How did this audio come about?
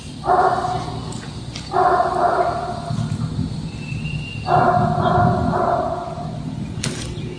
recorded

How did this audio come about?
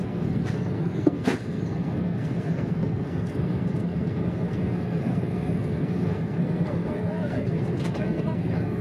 remade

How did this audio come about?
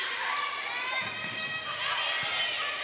recorded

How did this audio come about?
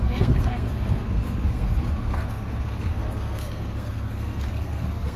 remade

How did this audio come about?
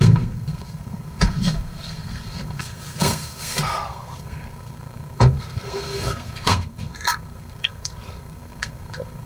remade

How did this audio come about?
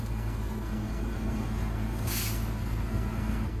remade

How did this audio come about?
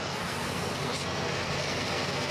remade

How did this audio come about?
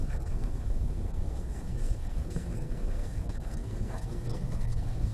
remade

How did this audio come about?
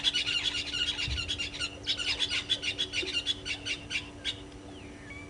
recorded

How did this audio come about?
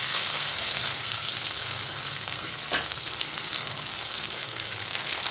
remade